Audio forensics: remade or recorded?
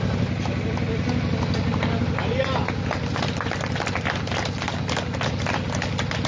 recorded